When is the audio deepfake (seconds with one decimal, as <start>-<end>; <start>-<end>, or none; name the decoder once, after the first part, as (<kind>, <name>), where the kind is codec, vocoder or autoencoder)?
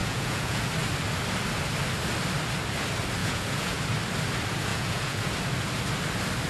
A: 0.0-0.7 (vocoder, Vocos); 3.2-3.8; 4.7-5.3